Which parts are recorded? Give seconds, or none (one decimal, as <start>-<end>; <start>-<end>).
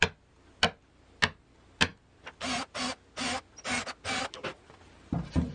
0.0-5.5